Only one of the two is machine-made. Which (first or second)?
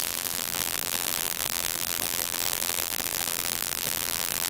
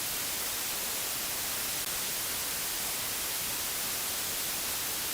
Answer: first